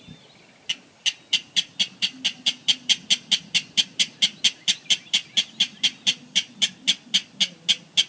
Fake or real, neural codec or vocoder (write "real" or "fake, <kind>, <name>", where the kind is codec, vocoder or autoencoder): real